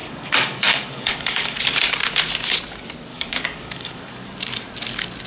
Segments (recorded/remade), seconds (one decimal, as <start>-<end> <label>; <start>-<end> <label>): 0.0-1.6 remade; 1.6-3.1 recorded; 3.1-4.3 remade; 4.3-5.3 recorded